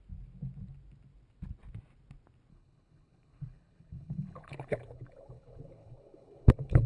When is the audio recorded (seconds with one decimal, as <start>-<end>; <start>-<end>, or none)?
0.0-2.5